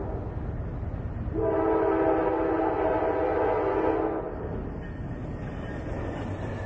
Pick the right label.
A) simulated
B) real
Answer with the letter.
B